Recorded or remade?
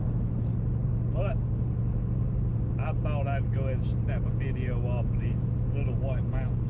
recorded